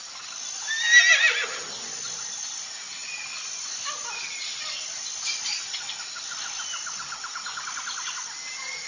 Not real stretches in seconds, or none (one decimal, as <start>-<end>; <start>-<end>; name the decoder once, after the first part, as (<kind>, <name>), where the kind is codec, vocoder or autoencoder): none